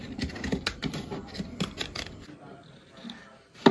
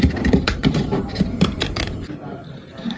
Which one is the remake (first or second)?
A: second